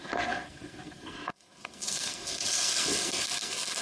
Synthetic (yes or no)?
yes